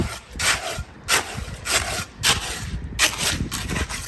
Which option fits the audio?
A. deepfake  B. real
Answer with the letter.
B